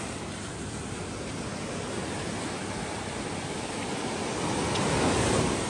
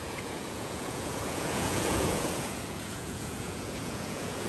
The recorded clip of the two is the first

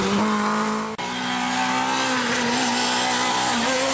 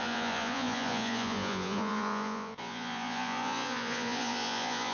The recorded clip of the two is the first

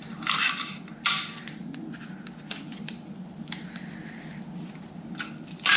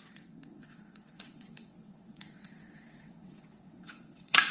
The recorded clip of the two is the first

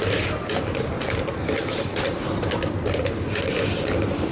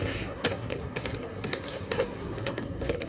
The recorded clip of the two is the first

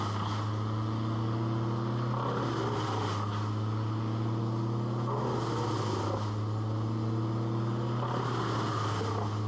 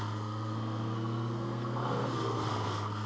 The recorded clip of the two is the first